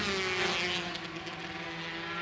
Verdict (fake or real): real